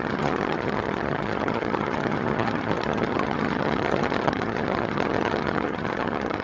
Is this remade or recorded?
remade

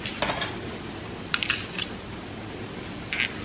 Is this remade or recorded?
recorded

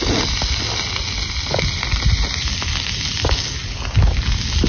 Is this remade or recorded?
recorded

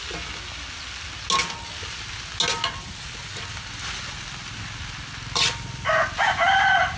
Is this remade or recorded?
recorded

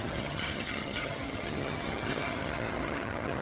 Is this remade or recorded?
remade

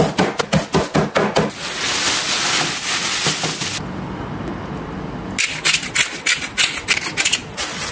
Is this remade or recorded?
recorded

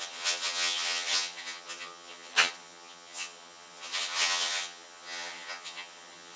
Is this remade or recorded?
remade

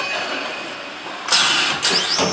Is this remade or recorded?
recorded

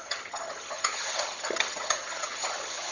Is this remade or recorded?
remade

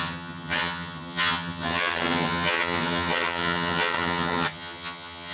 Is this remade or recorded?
remade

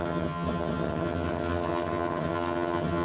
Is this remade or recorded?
remade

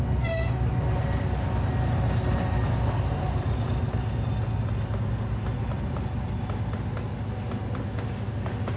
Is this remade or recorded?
recorded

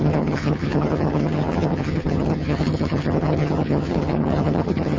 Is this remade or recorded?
remade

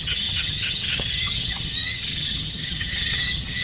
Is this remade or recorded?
remade